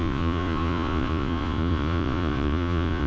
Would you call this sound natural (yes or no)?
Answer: no